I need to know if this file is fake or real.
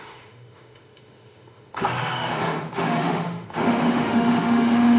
fake